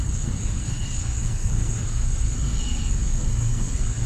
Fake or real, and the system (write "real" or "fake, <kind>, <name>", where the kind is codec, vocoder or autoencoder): fake, codec, SNAC